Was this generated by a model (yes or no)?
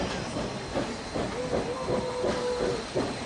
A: no